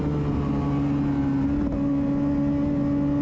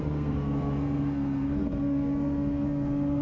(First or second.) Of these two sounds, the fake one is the second